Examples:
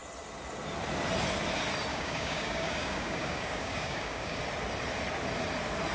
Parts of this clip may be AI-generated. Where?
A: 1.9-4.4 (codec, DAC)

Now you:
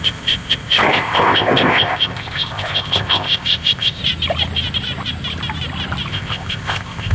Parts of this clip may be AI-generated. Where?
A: 0.0-4.0 (codec, ZipCodec); 6.1-7.1

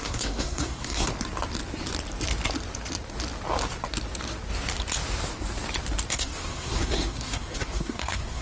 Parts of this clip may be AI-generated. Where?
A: 0.0-1.1 (codec, SNAC); 6.1-8.4

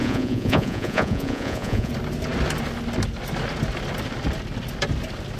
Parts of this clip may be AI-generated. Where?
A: 0.0-1.9 (vocoder, Vocos)

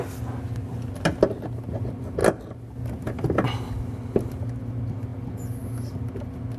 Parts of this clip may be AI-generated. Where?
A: none